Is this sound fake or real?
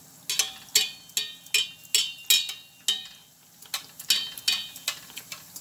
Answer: real